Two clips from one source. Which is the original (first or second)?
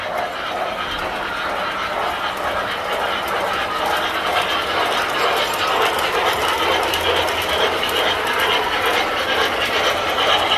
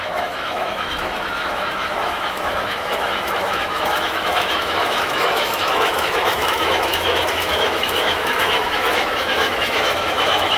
first